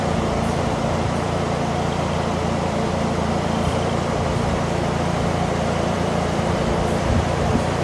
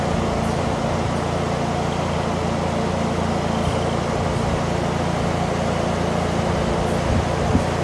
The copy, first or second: first